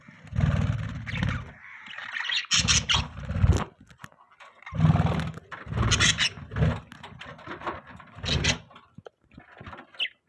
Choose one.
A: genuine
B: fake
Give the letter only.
A